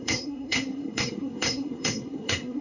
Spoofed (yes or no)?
yes